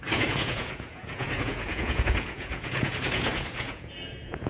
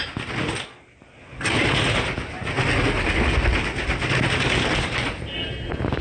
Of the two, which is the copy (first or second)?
first